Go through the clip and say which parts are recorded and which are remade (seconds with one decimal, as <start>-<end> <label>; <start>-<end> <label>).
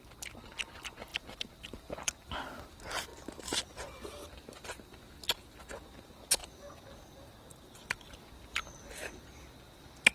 0.0-1.1 recorded; 1.1-2.1 remade; 2.1-3.1 recorded; 3.1-5.0 remade; 5.0-6.4 recorded; 6.4-10.1 remade